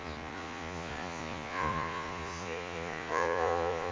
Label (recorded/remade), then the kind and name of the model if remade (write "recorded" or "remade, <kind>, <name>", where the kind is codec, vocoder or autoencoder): remade, vocoder, Vocos